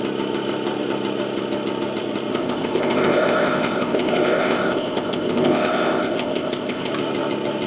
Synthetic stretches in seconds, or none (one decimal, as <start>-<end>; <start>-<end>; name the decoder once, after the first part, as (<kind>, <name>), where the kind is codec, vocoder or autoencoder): 2.3-6.9 (codec, ZipCodec)